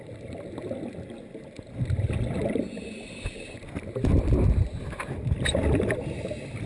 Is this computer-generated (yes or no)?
no